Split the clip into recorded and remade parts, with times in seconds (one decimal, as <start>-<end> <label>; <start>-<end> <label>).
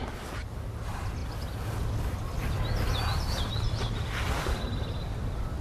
0.0-5.6 recorded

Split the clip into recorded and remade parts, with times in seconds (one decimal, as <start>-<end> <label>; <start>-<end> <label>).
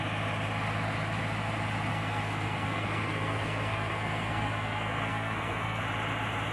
0.0-1.9 recorded; 1.9-5.8 remade; 5.8-6.5 recorded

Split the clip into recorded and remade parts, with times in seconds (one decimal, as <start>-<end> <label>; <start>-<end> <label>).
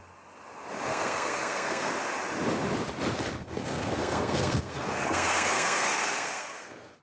0.0-0.9 recorded; 0.9-1.9 remade; 1.9-3.4 recorded; 3.4-7.0 remade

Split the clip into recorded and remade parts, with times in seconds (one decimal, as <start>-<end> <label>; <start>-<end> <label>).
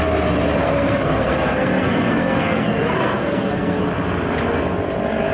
0.0-0.6 recorded; 0.6-3.8 remade; 3.8-5.3 recorded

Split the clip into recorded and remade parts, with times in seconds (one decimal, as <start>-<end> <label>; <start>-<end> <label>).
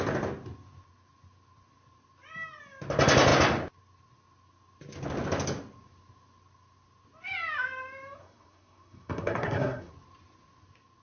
0.0-8.2 recorded; 8.2-9.9 remade; 9.9-11.0 recorded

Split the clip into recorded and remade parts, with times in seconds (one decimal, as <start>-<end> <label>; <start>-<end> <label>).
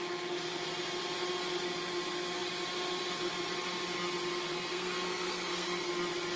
0.0-4.5 recorded; 4.5-5.9 remade; 5.9-6.4 recorded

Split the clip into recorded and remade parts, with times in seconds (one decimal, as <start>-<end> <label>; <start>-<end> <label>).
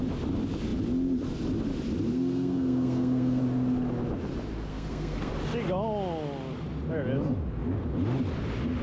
0.0-2.1 recorded; 2.1-3.4 remade; 3.4-4.7 recorded; 4.7-5.3 remade; 5.3-8.8 recorded